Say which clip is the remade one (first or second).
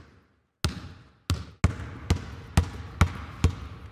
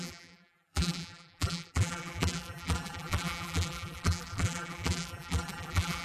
second